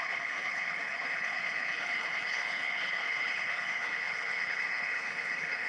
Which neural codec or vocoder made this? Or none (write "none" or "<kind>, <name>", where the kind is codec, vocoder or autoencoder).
codec, HILCodec